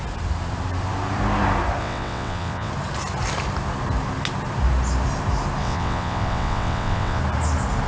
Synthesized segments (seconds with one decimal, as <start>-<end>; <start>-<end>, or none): 1.8-2.7; 5.6-7.2